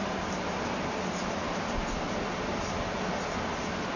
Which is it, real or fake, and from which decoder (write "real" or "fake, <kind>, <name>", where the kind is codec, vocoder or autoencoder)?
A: real